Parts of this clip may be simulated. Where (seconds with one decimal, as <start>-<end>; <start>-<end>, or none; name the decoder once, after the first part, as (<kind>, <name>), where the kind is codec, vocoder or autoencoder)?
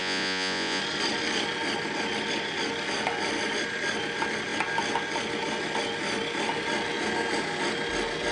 0.0-0.8 (vocoder, Vocos)